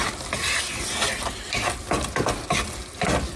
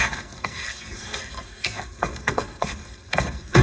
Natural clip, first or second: first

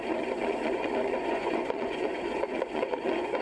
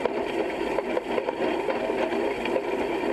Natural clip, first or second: second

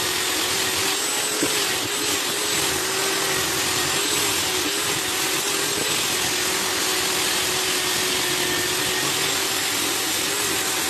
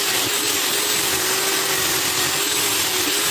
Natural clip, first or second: first